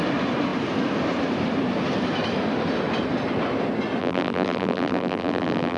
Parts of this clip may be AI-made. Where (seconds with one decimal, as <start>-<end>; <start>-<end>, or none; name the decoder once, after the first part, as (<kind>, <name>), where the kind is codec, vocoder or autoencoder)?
4.0-5.8 (vocoder, BigVGAN v2)

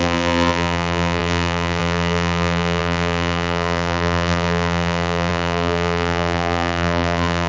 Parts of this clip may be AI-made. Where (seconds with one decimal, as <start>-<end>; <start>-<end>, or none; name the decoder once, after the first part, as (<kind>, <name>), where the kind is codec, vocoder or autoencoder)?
0.0-7.5 (vocoder, BigVGAN v2)

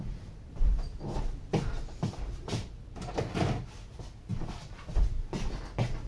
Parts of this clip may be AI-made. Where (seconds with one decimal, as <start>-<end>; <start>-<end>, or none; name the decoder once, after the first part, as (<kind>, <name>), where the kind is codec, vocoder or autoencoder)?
0.9-3.3 (vocoder, BigVGAN v2); 4.3-4.9

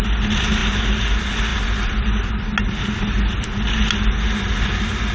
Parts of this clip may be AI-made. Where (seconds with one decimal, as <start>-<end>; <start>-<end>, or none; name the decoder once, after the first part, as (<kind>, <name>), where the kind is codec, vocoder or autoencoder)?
1.5-2.3 (vocoder, BigVGAN v2)

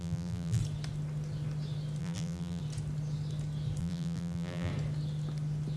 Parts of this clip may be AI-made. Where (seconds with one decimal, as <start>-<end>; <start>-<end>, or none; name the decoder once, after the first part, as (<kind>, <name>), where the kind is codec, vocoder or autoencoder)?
0.0-0.6 (vocoder, BigVGAN v2); 2.0-2.6; 3.8-4.7

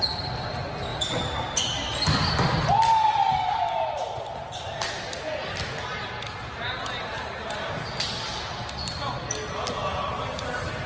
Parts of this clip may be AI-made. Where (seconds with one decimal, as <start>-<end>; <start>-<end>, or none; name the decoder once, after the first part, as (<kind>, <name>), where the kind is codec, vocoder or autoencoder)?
none